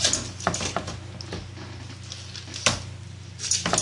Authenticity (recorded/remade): recorded